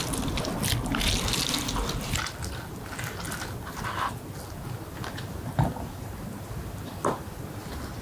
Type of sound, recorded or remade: recorded